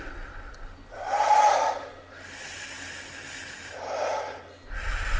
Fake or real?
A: real